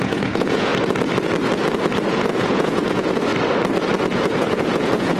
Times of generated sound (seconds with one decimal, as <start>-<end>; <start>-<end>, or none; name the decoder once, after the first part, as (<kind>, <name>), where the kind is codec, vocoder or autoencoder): 0.0-0.7 (vocoder, Vocos); 2.1-3.3; 4.0-5.2